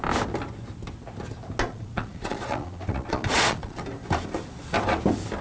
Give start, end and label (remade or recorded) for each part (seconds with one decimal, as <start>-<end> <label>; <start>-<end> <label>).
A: 0.0-1.7 recorded; 1.7-3.8 remade; 3.8-5.4 recorded